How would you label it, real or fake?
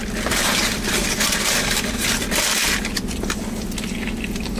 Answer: real